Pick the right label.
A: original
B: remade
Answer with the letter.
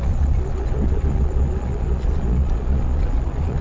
B